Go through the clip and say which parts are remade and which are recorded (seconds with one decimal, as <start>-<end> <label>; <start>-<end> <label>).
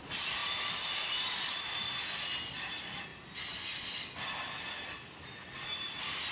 0.0-6.3 recorded